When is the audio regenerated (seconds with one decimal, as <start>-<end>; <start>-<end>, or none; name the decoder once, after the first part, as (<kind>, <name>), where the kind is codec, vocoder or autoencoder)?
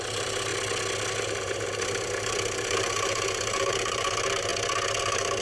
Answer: 0.0-0.5 (vocoder, BigVGAN v2); 1.1-4.5; 5.0-5.4